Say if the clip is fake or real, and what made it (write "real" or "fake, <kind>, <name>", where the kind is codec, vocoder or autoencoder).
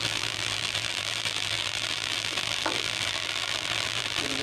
fake, vocoder, BigVGAN v2